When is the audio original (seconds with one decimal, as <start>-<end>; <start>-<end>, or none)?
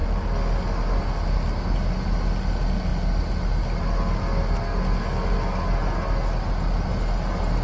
0.0-7.6